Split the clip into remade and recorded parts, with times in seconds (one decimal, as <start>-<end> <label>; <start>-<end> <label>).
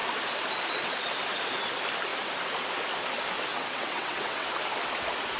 0.0-3.5 recorded; 3.5-4.5 remade; 4.5-5.4 recorded